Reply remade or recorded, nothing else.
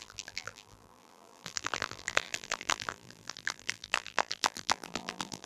remade